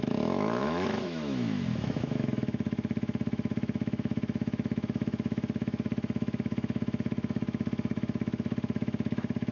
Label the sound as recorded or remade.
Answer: remade